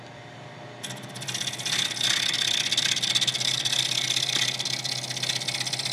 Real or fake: real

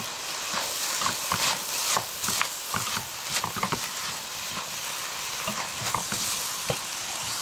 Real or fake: real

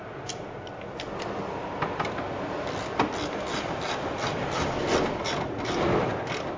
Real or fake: real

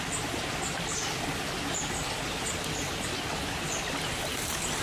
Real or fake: real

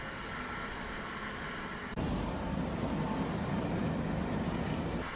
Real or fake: fake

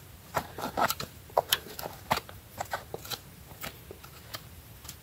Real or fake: fake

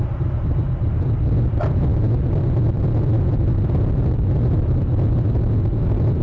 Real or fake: fake